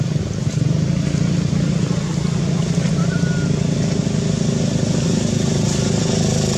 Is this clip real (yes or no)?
yes